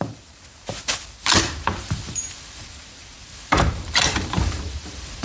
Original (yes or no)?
no